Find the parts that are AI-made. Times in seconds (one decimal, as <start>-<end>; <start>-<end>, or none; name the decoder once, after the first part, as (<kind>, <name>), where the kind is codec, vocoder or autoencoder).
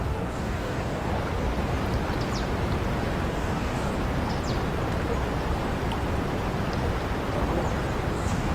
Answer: 0.0-1.1 (codec, DAC); 3.3-3.9; 8.1-8.5